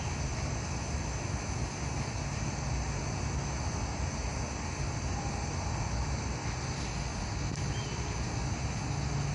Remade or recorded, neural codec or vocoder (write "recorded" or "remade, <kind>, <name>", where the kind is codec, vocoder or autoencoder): recorded